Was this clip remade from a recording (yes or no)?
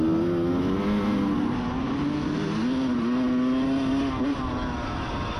no